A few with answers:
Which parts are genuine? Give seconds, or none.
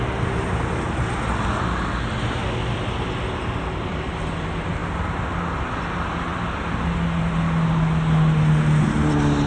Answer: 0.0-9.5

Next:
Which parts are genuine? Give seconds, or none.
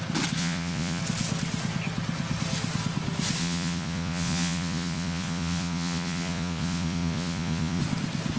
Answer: 0.0-0.4; 1.0-3.4; 7.8-8.4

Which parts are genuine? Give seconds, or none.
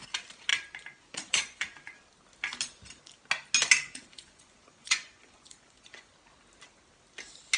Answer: 0.0-0.5; 2.0-3.8; 6.1-7.6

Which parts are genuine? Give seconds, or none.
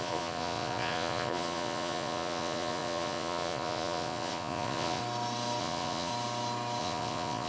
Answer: 5.0-5.6; 6.1-6.8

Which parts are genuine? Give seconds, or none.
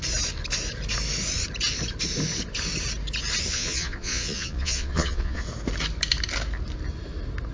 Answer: 0.0-3.5; 5.4-7.5